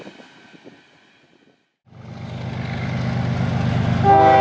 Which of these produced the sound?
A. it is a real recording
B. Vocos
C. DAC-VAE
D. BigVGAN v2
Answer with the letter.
A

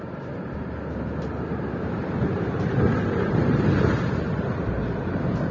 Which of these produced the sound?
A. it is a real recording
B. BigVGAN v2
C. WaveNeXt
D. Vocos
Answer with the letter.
B